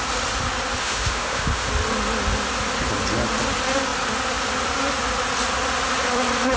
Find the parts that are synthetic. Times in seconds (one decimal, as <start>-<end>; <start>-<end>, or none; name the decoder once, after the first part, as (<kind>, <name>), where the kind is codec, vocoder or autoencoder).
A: 0.8-1.7 (autoencoder, DAC-VAE)